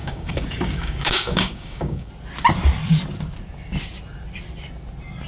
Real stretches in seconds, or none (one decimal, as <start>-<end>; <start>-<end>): 2.1-5.3